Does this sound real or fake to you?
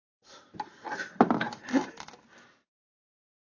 real